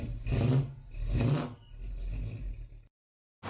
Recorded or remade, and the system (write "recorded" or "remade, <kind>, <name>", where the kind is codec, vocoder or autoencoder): recorded